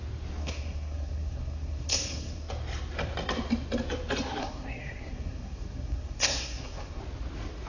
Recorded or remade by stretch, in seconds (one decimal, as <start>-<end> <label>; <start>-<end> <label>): 0.0-0.4 recorded; 0.4-2.5 remade; 2.5-4.4 recorded; 4.4-7.0 remade; 7.0-7.7 recorded